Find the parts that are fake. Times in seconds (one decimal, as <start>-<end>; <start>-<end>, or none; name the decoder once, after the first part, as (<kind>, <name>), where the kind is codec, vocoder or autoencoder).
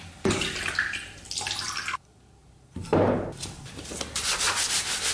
2.4-3.0 (vocoder, BigVGAN v2)